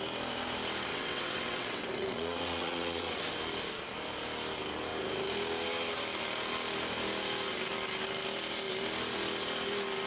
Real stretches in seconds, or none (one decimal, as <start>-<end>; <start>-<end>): 0.0-0.9; 3.4-10.1